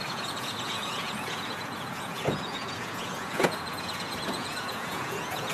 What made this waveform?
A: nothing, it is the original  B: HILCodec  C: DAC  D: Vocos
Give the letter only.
D